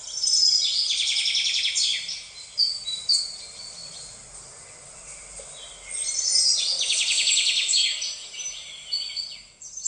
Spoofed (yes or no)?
no